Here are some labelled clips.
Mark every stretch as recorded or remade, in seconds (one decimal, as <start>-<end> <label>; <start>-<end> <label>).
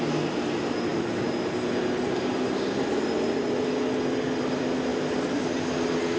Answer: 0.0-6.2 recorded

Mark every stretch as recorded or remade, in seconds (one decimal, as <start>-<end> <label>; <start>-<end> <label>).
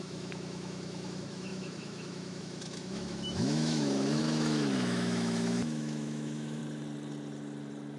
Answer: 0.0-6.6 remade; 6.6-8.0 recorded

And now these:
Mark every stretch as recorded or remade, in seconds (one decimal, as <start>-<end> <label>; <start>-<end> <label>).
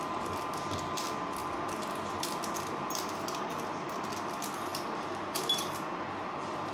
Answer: 0.0-6.7 recorded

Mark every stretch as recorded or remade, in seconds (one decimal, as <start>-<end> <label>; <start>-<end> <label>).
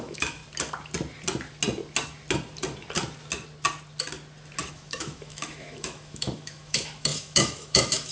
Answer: 0.0-0.4 remade; 0.4-4.7 recorded; 4.7-8.1 remade